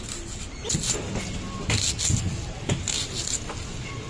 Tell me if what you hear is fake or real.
real